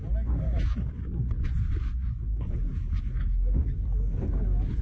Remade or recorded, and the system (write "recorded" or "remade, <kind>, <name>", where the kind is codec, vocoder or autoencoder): recorded